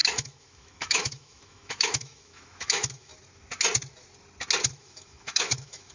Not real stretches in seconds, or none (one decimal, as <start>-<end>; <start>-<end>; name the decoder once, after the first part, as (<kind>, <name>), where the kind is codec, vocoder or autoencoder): 0.0-3.1 (autoencoder, DAC-VAE); 4.7-5.9